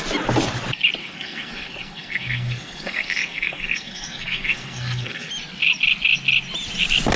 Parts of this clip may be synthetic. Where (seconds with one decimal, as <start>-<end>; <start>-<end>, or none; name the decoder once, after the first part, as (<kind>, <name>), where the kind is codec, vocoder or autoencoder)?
1.0-5.3 (codec, SNAC)